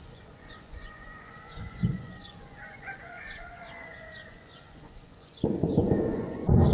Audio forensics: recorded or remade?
remade